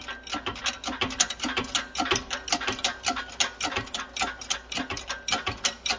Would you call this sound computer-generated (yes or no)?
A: no